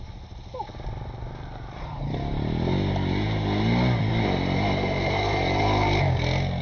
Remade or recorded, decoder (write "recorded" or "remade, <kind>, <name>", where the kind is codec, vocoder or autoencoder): recorded